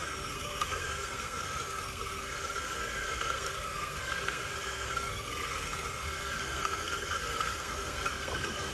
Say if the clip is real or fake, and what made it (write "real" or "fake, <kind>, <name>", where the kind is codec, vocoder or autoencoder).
fake, codec, SNAC